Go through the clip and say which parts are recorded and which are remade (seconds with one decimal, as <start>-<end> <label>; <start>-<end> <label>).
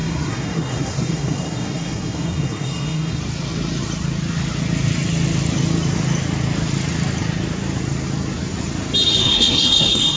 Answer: 0.0-3.2 remade; 3.2-9.2 recorded; 9.2-10.2 remade